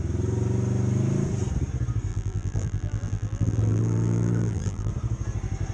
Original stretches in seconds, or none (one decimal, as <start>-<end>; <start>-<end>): 0.0-2.1; 4.9-5.7